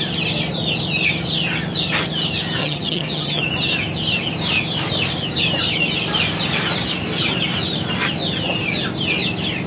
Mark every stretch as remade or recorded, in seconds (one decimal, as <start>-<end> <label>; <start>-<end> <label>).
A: 0.0-2.6 recorded; 2.6-3.4 remade; 3.4-9.7 recorded